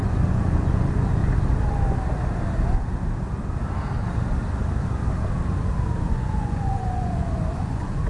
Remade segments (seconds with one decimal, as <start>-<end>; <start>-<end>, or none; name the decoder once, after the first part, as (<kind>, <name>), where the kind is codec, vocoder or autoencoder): 0.0-1.2 (vocoder, Vocos); 6.1-8.1